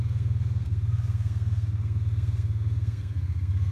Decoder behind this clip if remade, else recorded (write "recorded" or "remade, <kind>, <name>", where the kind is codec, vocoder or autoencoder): remade, codec, SNAC